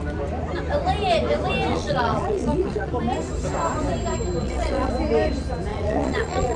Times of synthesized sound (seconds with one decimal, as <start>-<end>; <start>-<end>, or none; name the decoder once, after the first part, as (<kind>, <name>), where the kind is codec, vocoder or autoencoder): 1.7-2.9 (vocoder, Vocos); 4.4-4.9; 5.7-6.6